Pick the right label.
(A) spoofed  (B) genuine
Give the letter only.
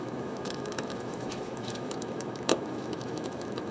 A